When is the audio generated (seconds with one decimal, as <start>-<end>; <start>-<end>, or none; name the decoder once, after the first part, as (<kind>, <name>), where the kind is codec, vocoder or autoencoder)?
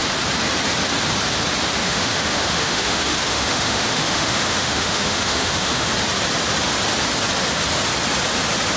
1.8-5.9 (autoencoder, DAC-VAE)